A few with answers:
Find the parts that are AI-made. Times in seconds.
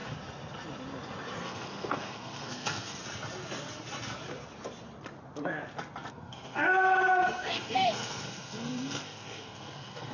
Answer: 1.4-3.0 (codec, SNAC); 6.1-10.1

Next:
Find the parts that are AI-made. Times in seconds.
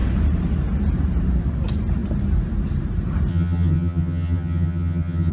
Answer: 3.3-5.3 (vocoder, HiFi-GAN)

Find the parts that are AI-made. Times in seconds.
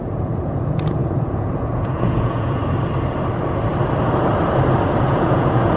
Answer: 0.0-2.6 (vocoder, Vocos); 5.0-5.8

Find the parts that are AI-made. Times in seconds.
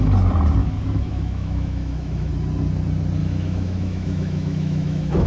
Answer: 0.6-2.3 (autoencoder, DAC-VAE); 3.2-5.3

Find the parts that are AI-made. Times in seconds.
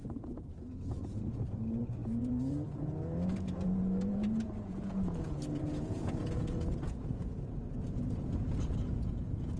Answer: 0.0-9.6 (vocoder, Vocos)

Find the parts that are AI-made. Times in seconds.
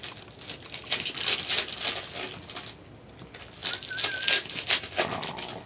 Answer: none